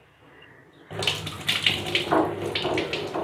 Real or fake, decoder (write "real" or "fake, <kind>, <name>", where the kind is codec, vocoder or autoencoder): real